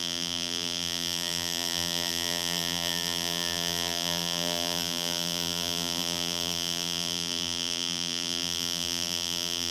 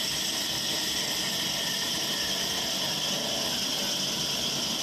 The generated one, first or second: first